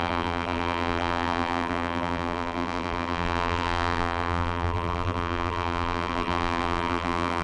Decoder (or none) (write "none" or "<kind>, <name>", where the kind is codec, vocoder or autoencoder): vocoder, BigVGAN v2